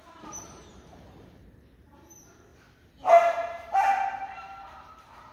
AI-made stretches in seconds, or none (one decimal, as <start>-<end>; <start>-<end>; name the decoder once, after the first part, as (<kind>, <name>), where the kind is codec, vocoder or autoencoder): 0.0-2.5 (vocoder, BigVGAN v2); 3.5-5.3